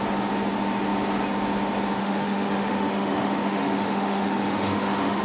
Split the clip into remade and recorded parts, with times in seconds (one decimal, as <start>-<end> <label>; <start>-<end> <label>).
0.0-2.0 recorded; 2.0-5.2 remade